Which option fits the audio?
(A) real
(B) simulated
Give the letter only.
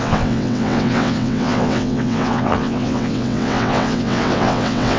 B